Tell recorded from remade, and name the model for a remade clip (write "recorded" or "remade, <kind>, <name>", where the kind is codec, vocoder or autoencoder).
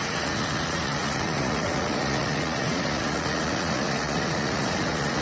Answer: remade, vocoder, Vocos